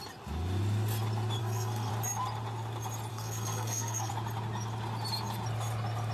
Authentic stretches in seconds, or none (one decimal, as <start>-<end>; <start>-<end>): 0.0-1.4; 1.9-3.1; 4.1-6.1